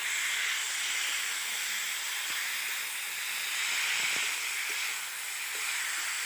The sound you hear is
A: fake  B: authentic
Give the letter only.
B